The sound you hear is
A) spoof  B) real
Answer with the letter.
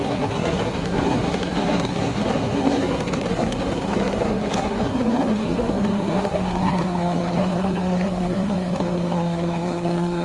A